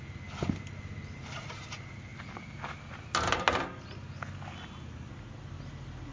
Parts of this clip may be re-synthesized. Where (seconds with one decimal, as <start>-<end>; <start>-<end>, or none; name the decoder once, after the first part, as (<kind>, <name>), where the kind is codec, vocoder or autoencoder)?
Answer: none